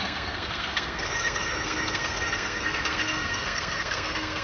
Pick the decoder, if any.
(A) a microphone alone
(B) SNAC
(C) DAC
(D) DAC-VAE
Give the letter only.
B